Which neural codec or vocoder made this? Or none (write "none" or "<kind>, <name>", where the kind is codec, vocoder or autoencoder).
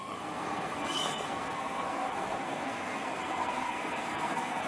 codec, SNAC